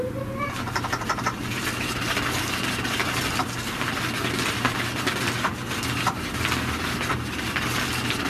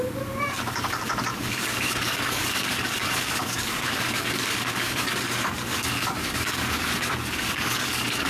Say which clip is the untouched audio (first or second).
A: first